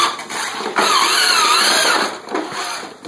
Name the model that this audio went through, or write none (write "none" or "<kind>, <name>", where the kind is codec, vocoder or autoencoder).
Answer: none